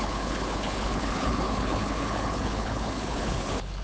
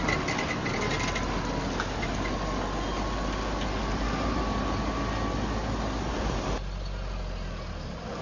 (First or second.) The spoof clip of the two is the first